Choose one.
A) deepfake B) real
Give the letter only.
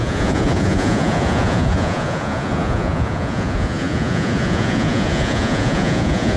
A